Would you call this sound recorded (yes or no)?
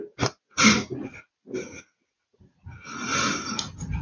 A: yes